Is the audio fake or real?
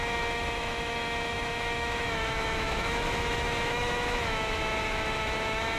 fake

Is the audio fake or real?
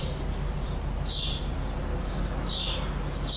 real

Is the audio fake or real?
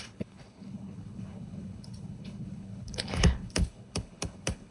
fake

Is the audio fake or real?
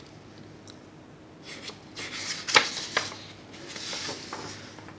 real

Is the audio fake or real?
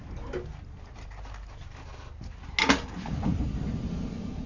real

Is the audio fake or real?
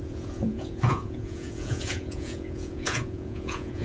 fake